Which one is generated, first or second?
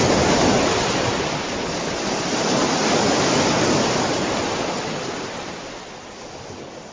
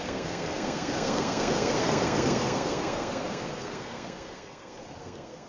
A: second